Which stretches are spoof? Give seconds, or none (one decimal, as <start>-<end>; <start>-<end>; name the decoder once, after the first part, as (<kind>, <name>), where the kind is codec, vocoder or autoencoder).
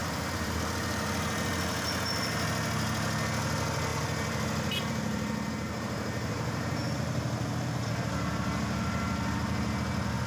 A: 0.0-1.5 (vocoder, BigVGAN v2); 3.9-7.9